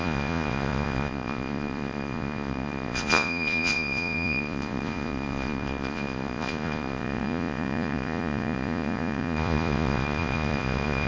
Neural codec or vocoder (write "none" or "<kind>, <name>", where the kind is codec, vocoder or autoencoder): vocoder, Vocos